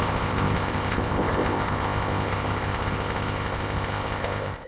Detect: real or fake fake